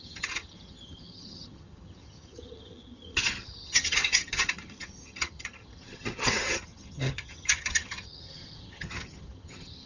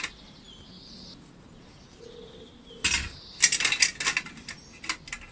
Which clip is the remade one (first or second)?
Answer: first